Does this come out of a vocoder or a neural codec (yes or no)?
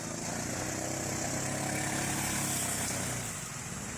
no